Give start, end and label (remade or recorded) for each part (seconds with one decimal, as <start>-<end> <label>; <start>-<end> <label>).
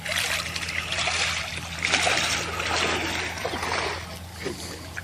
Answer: 0.0-5.0 recorded